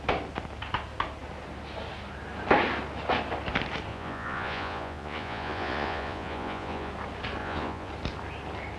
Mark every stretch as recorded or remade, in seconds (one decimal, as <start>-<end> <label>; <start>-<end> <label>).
0.0-3.9 recorded; 3.9-6.9 remade; 6.9-7.4 recorded; 7.4-7.9 remade; 7.9-8.8 recorded